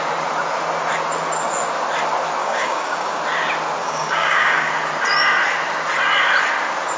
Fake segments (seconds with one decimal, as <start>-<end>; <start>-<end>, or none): 2.4-3.2; 3.8-4.7